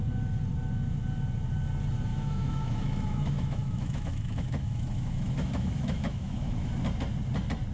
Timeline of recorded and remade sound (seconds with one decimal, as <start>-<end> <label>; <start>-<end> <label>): 0.0-2.1 recorded; 2.1-6.7 remade; 6.7-7.7 recorded